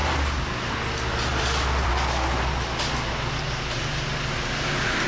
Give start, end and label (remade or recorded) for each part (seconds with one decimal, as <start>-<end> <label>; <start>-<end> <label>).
0.0-1.3 recorded; 1.3-1.9 remade; 1.9-5.1 recorded